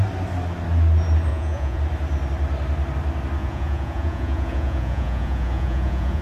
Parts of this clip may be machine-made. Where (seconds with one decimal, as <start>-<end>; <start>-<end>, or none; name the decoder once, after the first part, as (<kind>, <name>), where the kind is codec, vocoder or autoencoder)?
1.3-1.8 (vocoder, Vocos); 3.4-6.2